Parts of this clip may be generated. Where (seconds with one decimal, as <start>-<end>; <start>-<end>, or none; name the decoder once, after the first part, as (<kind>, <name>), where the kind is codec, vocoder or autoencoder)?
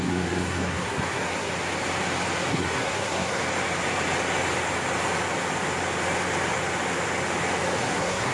0.0-1.5 (codec, SNAC); 2.5-3.4; 7.8-8.3